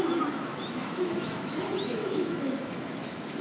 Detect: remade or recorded remade